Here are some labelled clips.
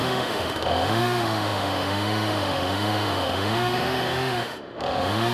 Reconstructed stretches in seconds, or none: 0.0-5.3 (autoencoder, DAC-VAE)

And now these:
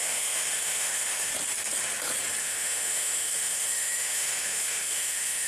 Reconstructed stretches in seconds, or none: 0.0-1.3 (autoencoder, DAC-VAE); 2.4-5.5

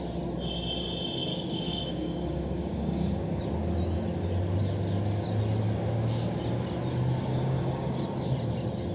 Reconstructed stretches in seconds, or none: 1.3-3.4 (codec, DAC); 7.3-8.0